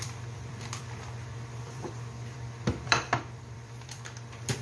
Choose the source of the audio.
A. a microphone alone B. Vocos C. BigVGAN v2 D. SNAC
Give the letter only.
C